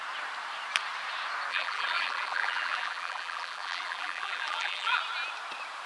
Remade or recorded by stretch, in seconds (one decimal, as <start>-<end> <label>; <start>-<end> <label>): 0.0-1.5 recorded; 1.5-5.0 remade; 5.0-5.9 recorded